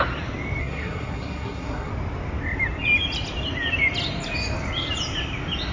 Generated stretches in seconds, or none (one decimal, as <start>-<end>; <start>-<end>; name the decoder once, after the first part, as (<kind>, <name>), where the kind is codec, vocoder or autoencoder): 0.6-1.9 (codec, SNAC)